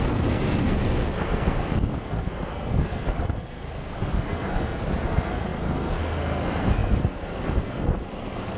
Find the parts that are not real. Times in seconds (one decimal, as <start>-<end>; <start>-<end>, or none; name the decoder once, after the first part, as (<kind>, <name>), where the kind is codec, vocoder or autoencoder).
0.0-8.6 (codec, SNAC)